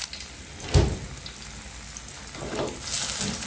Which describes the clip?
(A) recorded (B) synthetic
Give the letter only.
A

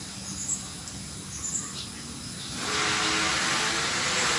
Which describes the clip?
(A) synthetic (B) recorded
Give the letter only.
B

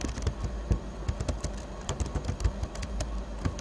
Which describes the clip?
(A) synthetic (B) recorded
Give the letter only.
B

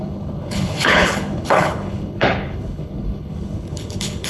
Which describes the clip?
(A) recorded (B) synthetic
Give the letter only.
B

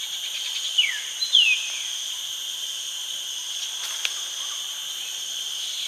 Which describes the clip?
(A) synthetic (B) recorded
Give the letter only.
B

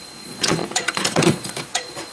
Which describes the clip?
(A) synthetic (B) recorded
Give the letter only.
A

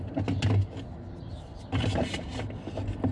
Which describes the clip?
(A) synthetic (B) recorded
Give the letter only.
B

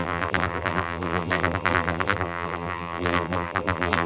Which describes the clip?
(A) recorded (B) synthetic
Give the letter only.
B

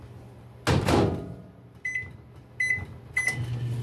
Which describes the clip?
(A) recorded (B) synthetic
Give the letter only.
A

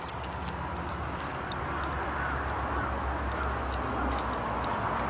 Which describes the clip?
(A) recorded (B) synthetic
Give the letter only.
A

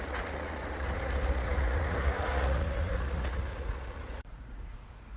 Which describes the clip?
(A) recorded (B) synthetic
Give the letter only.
B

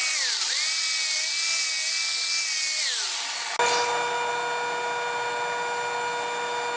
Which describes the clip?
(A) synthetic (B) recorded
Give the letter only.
B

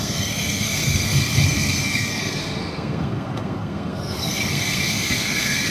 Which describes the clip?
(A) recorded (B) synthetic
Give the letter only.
B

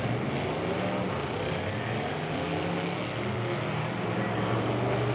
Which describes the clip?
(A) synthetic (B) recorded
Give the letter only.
B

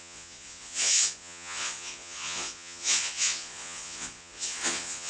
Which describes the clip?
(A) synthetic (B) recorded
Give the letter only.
A